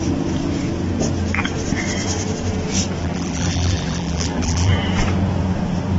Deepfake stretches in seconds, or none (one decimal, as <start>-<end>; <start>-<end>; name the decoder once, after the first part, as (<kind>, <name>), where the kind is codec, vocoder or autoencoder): 3.0-4.7 (vocoder, BigVGAN v2)